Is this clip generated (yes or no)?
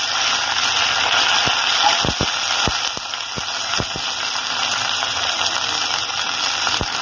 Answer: no